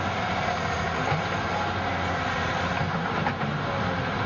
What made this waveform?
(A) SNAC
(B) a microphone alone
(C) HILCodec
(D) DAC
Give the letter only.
B